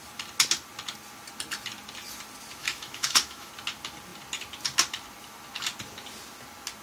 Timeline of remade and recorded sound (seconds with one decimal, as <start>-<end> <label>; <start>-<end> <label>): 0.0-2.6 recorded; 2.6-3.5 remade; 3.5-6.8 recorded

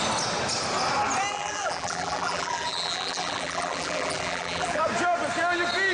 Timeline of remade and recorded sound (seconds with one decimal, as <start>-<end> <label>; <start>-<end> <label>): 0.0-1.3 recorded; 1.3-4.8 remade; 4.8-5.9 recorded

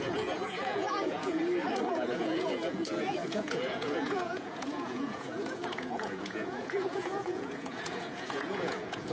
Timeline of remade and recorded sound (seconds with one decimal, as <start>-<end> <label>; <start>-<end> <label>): 0.0-1.4 remade; 1.4-1.9 recorded; 1.9-9.1 remade

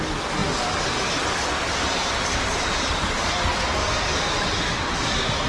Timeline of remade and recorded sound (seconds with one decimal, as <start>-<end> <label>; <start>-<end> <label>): 0.0-5.5 recorded

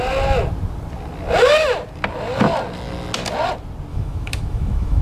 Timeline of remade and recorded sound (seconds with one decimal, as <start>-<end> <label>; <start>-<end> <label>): 0.0-3.9 recorded; 3.9-5.0 remade

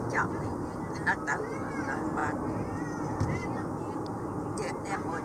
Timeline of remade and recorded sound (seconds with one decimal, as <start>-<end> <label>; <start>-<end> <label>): 0.0-5.2 recorded

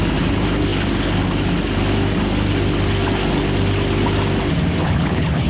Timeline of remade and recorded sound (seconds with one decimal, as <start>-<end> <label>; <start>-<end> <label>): 0.0-4.8 recorded; 4.8-5.5 remade